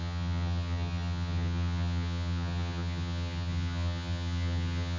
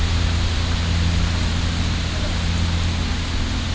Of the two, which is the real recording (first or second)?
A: second